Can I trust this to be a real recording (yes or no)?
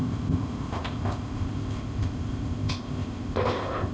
no